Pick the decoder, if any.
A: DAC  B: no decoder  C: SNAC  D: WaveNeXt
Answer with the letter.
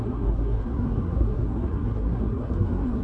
C